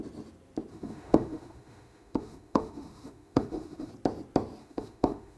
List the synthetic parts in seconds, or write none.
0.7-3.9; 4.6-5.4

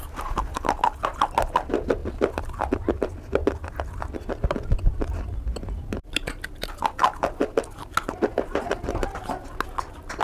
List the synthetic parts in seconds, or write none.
none

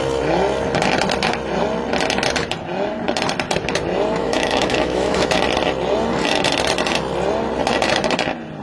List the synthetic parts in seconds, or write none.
4.2-5.4

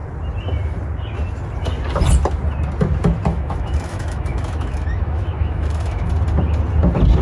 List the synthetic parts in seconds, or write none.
3.3-6.1

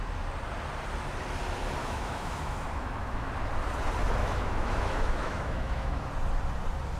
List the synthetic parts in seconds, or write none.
1.8-3.3; 4.2-6.1

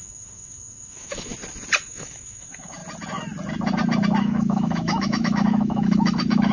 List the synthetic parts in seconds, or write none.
0.0-1.3; 1.8-2.8; 4.2-6.5

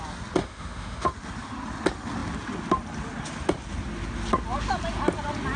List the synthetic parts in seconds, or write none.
0.4-1.1